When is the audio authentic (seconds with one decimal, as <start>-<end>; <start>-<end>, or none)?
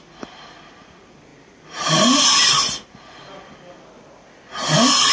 0.0-5.1